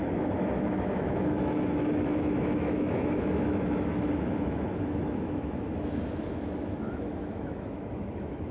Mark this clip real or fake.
fake